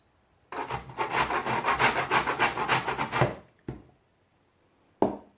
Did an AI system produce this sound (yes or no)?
no